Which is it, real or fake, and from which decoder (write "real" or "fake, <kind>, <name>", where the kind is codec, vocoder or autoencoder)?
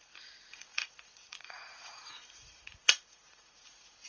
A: fake, vocoder, Vocos